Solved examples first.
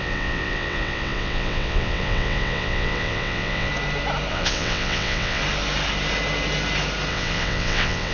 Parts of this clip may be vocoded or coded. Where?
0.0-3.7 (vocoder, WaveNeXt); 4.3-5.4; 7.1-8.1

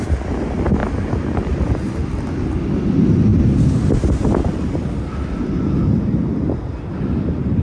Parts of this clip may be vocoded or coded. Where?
none

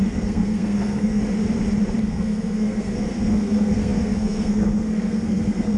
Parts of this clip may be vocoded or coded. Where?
0.0-1.2 (codec, SNAC); 2.0-5.8

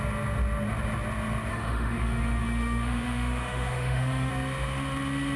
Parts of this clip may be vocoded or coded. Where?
1.5-4.3 (autoencoder, DAC-VAE)

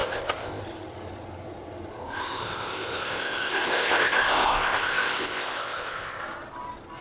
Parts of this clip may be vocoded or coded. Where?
0.0-0.6 (codec, ZipCodec); 2.0-6.2

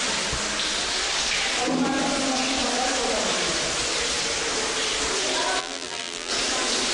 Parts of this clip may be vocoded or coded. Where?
5.6-6.3 (vocoder, BigVGAN v2)